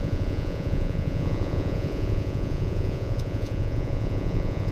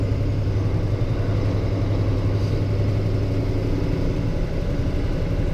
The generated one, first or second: first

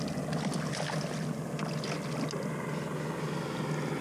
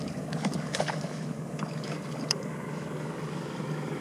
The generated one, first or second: second